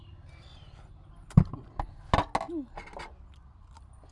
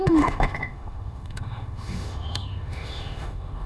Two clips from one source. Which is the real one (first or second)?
first